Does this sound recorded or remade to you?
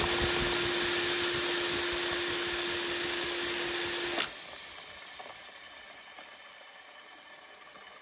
recorded